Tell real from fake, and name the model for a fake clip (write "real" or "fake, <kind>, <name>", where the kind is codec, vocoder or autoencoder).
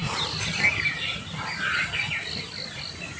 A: real